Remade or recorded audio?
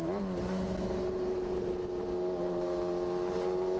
recorded